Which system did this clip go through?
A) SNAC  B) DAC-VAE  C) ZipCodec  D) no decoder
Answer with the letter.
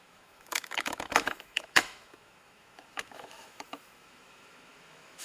B